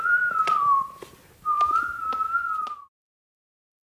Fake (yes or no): no